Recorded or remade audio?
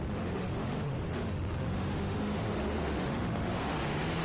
remade